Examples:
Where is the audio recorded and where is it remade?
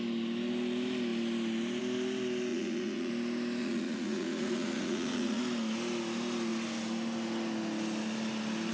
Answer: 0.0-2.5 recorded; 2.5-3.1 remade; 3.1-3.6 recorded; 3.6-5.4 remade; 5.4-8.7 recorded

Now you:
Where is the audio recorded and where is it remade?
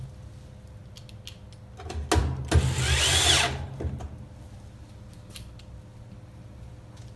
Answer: 0.0-7.2 recorded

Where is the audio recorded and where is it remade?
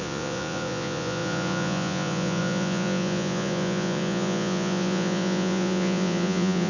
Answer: 0.0-6.7 remade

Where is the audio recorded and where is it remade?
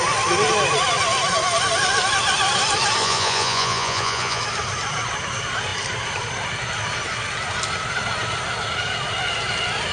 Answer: 0.0-3.0 recorded; 3.0-4.4 remade; 4.4-9.9 recorded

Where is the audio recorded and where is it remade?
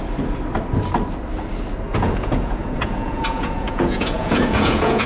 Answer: 0.0-1.9 recorded; 1.9-5.1 remade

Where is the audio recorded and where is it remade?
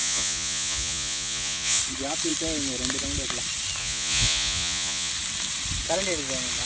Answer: 0.0-1.8 remade; 1.8-3.8 recorded; 3.8-5.1 remade; 5.1-6.7 recorded